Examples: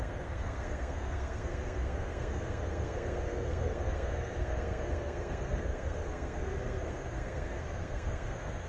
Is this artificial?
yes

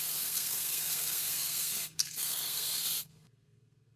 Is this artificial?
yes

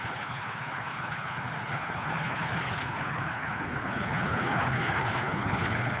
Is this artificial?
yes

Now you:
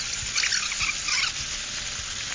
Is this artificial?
no